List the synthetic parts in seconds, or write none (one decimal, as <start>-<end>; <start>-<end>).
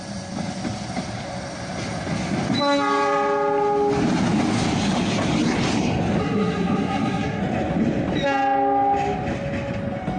6.2-7.4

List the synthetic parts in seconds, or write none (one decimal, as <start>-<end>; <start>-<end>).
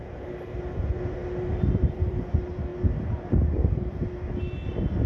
1.2-2.3